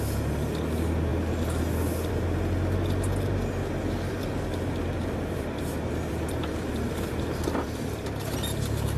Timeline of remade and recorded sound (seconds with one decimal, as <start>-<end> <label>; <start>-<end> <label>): 0.0-3.8 recorded; 3.8-7.9 remade; 7.9-9.0 recorded

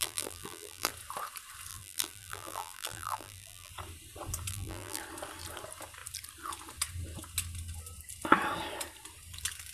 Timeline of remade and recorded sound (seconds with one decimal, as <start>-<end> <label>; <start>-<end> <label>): 0.0-0.9 remade; 0.9-1.7 recorded; 1.7-3.7 remade; 3.7-4.5 recorded; 4.5-5.0 remade; 5.0-9.7 recorded

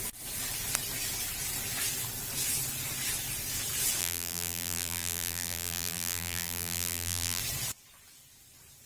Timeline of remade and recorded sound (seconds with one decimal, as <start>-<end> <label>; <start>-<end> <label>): 0.0-4.0 recorded; 4.0-7.4 remade; 7.4-8.9 recorded

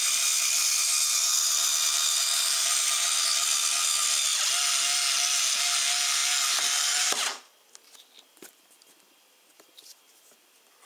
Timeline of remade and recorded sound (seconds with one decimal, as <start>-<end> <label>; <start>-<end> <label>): 0.0-10.9 recorded

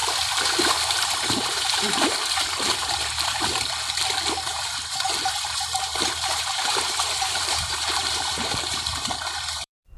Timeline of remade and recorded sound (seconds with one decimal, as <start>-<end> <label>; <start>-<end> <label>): 0.0-1.0 recorded; 1.0-2.2 remade; 2.2-2.8 recorded; 2.8-3.5 remade; 3.5-4.5 recorded; 4.5-10.0 remade

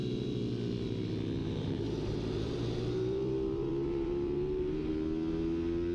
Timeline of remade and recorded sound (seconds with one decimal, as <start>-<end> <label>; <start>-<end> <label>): 0.0-1.4 recorded; 1.4-4.9 remade; 4.9-5.9 recorded

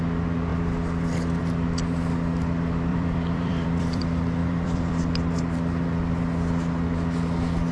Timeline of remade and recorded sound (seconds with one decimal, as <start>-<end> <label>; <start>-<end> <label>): 0.0-2.9 recorded; 2.9-4.0 remade; 4.0-4.4 recorded; 4.4-5.0 remade; 5.0-7.7 recorded